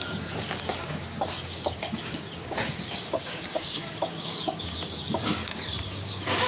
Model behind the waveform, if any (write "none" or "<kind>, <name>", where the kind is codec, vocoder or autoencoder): codec, DAC